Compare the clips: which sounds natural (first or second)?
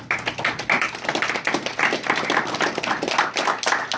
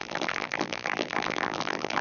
first